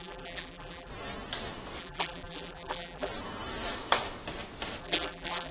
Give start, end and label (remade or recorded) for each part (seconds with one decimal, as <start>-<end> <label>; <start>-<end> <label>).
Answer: 0.0-0.9 remade; 0.9-1.8 recorded; 1.8-3.1 remade; 3.1-4.8 recorded; 4.8-5.5 remade